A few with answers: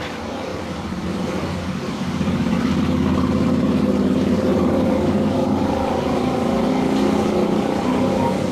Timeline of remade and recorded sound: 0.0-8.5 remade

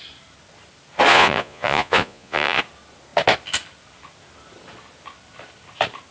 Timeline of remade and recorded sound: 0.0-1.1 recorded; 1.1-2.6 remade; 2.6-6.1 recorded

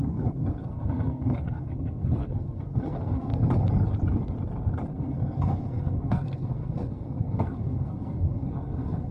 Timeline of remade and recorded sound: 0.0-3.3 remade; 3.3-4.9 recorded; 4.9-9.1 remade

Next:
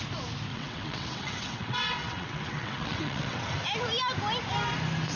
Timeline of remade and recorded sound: 0.0-0.5 recorded; 0.5-3.6 remade; 3.6-5.2 recorded